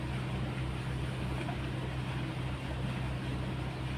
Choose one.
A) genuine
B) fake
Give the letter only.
A